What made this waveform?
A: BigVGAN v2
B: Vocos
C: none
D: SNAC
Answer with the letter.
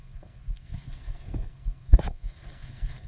D